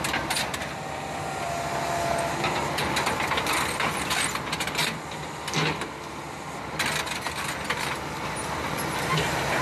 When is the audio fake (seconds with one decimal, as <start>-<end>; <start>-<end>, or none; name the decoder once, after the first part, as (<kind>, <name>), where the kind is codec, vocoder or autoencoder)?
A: none